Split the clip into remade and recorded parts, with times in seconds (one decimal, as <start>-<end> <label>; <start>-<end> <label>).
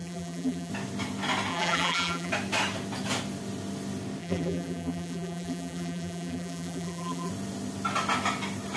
0.0-0.7 remade; 0.7-1.5 recorded; 1.5-2.3 remade; 2.3-4.2 recorded; 4.2-7.3 remade; 7.3-8.8 recorded